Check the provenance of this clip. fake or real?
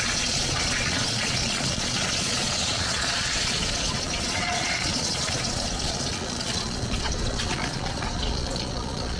fake